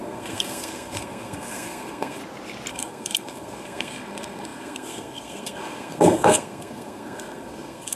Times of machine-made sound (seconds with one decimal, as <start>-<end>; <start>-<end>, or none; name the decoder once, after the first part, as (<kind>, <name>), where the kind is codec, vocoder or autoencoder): 0.0-2.2 (codec, SNAC); 2.7-8.0

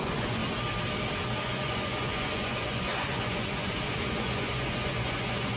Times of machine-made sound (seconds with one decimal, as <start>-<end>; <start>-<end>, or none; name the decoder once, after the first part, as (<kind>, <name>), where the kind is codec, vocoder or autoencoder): 0.0-0.4 (vocoder, Vocos); 1.4-5.6

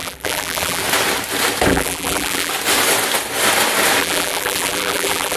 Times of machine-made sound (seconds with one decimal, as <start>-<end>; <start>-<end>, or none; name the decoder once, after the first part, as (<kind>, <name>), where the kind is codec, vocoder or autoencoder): 0.0-0.8 (vocoder, BigVGAN v2); 1.7-2.5; 4.0-5.4